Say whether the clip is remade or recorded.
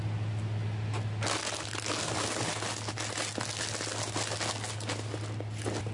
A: recorded